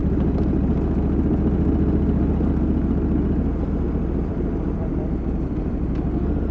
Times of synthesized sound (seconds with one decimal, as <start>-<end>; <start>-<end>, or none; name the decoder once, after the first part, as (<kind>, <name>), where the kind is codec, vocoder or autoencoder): 3.9-6.5 (vocoder, BigVGAN v2)